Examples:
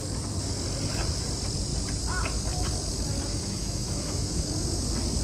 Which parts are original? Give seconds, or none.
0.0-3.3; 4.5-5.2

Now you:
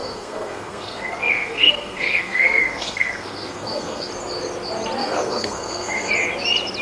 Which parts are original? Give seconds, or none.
4.1-5.0; 6.1-6.8

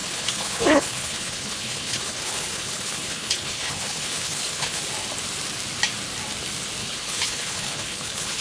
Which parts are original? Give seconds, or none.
4.8-6.8

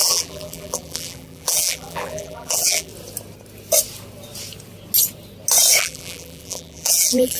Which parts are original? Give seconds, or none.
2.9-5.8

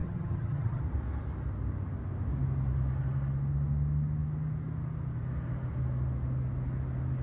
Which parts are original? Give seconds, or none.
0.8-7.2

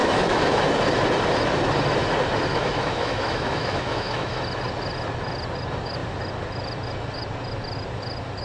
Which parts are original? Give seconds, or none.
0.6-2.5; 4.4-8.4

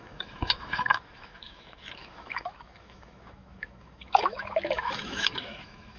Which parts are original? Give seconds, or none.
none

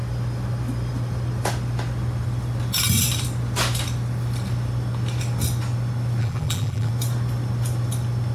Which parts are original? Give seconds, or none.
0.0-6.2; 6.9-8.3